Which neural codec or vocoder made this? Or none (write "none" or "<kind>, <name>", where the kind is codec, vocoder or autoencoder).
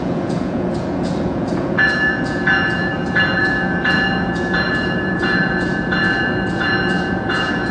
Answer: vocoder, Vocos